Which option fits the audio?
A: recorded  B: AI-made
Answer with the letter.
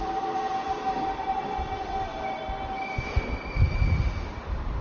A